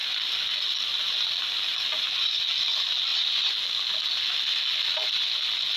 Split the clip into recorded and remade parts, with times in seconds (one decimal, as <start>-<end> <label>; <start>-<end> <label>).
0.0-5.8 recorded